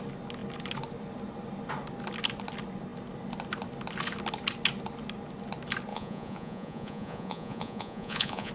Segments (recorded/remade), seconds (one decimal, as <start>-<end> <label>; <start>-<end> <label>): 0.0-5.9 recorded; 5.9-8.5 remade